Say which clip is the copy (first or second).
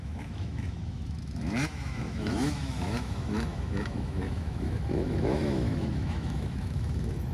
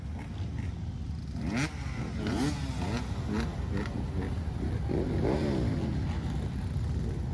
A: first